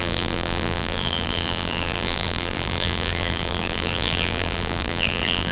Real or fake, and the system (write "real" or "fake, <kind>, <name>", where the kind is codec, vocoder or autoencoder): fake, vocoder, BigVGAN v2